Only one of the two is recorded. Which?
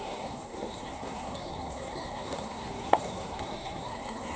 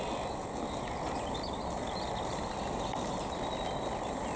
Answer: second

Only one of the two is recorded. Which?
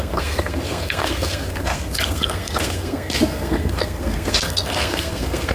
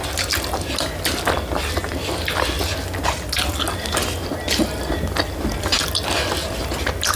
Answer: second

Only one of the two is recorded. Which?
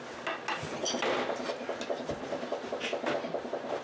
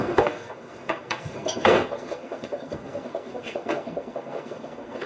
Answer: first